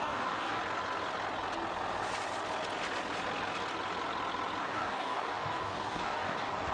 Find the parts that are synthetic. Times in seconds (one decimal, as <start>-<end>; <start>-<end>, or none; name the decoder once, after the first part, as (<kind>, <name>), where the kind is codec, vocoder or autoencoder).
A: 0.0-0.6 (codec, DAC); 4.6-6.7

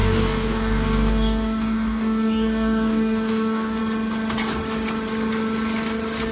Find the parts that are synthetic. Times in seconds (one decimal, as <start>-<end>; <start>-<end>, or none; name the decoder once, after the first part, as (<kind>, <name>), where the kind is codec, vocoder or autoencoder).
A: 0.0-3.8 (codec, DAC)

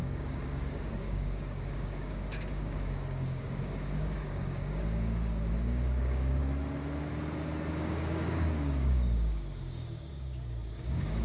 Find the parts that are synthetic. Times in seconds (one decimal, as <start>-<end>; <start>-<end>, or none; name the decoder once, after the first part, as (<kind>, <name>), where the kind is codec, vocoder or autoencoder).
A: 0.0-6.4 (codec, DAC); 7.7-11.2

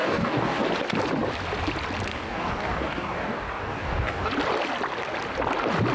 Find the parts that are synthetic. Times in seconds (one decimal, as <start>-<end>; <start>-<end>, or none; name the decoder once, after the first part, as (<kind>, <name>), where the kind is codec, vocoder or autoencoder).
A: 0.0-0.6 (codec, DAC); 2.1-4.3

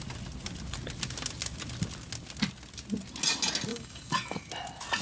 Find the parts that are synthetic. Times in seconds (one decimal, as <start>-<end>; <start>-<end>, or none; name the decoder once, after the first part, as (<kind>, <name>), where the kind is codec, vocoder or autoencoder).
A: 3.7-4.5 (codec, DAC)

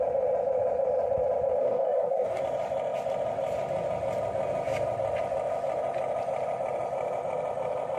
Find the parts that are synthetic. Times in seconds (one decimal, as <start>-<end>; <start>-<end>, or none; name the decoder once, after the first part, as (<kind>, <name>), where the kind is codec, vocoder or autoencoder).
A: 1.6-2.4 (codec, DAC)

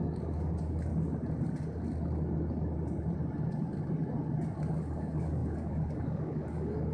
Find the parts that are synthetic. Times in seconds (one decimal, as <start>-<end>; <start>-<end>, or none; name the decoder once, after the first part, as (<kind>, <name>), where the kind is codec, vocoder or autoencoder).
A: 0.0-0.9 (codec, DAC); 4.7-6.9